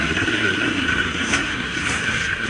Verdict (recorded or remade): remade